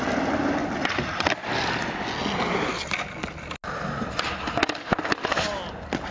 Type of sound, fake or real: real